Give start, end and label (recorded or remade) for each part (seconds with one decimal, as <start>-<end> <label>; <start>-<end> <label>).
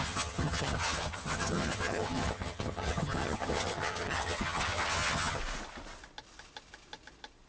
0.0-5.4 remade; 5.4-7.5 recorded